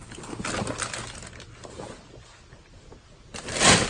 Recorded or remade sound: recorded